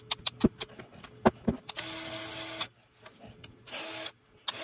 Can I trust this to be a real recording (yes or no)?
yes